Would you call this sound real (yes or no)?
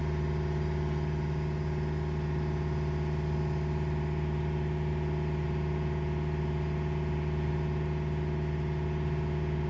yes